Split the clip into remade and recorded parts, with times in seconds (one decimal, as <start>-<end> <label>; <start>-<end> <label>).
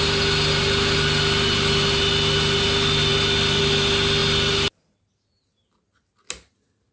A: 0.0-6.9 recorded